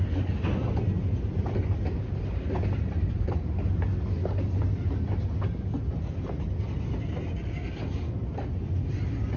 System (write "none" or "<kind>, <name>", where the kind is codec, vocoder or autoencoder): none